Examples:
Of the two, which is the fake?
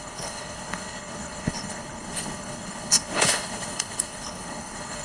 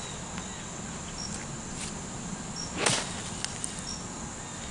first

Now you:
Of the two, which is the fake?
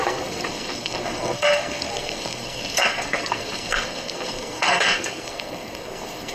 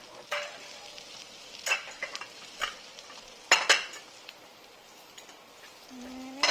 first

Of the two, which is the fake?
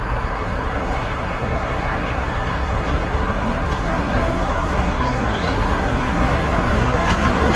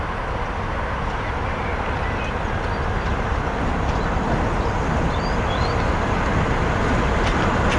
first